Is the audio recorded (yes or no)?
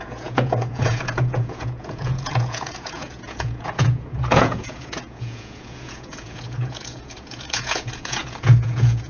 no